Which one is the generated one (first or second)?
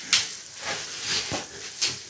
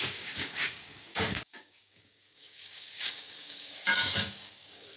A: second